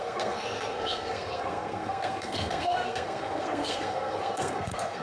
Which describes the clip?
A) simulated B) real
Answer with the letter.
A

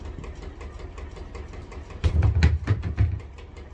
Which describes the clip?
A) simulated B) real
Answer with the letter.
B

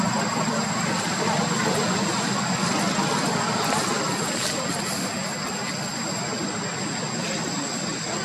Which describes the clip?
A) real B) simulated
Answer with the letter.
A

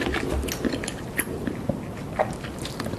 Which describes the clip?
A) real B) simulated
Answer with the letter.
A